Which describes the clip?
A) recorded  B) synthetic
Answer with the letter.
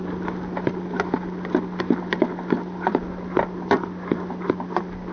A